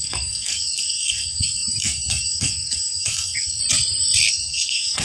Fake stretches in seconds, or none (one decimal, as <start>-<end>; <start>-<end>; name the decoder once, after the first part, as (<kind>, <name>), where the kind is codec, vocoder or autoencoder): 0.0-3.6 (codec, SNAC); 4.3-5.0